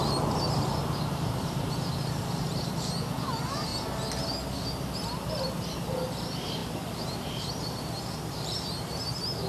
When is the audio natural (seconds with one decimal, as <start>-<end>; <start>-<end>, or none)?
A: 3.7-5.3